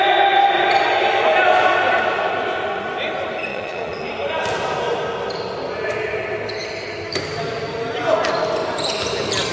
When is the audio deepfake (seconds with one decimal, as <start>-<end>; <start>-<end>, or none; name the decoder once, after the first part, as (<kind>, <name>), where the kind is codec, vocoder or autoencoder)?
3.5-4.1 (vocoder, Vocos)